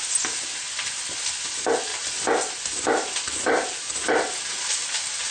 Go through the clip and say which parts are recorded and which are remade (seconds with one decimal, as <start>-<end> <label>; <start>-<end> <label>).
0.0-5.3 recorded